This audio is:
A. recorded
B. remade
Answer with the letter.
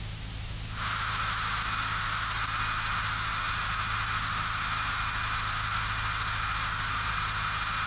A